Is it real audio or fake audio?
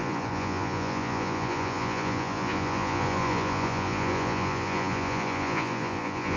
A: fake